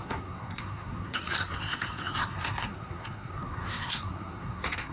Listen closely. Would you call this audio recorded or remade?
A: remade